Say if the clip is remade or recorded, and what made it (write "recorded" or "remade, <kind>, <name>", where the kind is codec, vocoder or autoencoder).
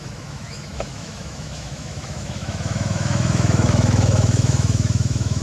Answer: remade, autoencoder, DAC-VAE